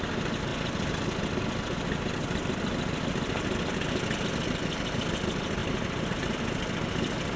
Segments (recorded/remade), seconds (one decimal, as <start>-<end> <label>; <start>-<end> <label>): 0.0-7.4 recorded